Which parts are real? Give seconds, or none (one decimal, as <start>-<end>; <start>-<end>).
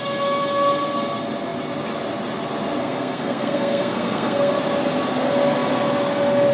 0.0-2.8; 4.5-6.5